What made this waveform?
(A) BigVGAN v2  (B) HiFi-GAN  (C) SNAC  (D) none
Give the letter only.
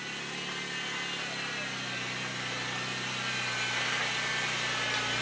D